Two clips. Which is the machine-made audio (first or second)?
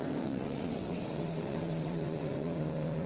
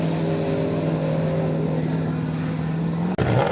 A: first